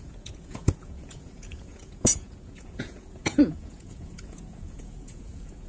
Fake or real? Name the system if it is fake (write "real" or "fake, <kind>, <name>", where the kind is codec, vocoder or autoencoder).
fake, vocoder, Vocos